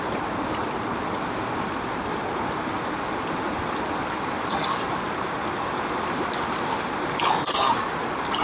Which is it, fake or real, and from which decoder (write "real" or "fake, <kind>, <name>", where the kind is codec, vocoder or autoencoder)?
real